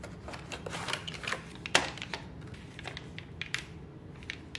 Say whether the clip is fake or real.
real